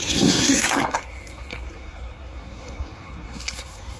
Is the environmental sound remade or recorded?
remade